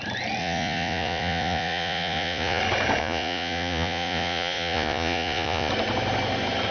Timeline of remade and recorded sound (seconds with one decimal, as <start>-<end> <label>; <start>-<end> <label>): 0.0-0.4 recorded; 0.4-2.6 remade; 2.6-3.0 recorded; 3.0-5.7 remade; 5.7-6.7 recorded